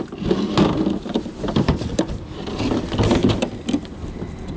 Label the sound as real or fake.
real